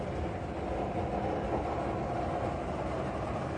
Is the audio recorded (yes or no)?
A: yes